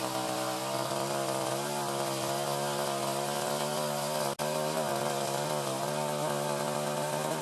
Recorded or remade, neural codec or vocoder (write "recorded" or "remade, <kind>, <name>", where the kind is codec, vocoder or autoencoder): recorded